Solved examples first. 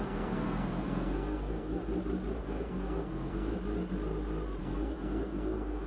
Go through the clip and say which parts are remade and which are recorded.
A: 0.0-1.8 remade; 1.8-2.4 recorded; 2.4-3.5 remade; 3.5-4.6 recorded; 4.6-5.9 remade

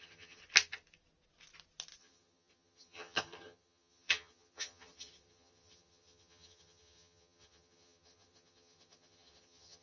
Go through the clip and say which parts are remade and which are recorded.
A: 0.0-0.4 remade; 0.4-2.0 recorded; 2.0-9.8 remade

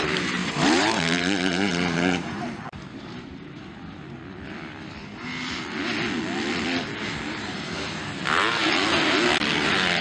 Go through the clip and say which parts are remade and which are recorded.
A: 0.0-3.6 remade; 3.6-7.3 recorded; 7.3-7.7 remade; 7.7-9.4 recorded; 9.4-10.0 remade

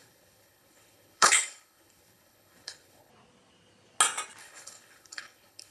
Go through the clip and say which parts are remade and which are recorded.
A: 0.0-3.1 remade; 3.1-4.4 recorded; 4.4-5.7 remade

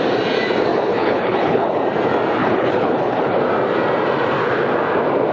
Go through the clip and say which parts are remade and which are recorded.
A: 0.0-0.7 recorded; 0.7-1.8 remade; 1.8-2.4 recorded; 2.4-3.4 remade; 3.4-5.3 recorded

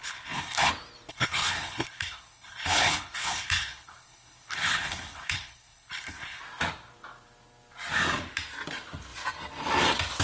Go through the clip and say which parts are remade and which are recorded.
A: 0.0-0.7 remade; 0.7-1.1 recorded; 1.1-6.4 remade; 6.4-10.2 recorded

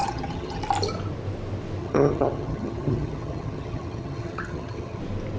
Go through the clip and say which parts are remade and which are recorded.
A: 0.0-0.6 remade; 0.6-1.8 recorded; 1.8-5.0 remade; 5.0-5.4 recorded